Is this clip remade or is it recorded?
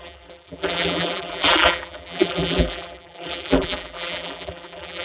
remade